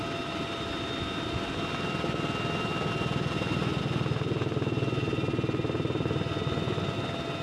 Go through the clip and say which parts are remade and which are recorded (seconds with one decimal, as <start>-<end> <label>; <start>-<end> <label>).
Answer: 0.0-7.4 recorded